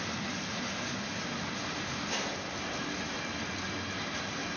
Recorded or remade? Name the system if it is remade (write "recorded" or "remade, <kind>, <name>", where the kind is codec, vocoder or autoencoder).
recorded